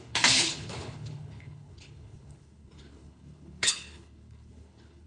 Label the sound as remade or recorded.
remade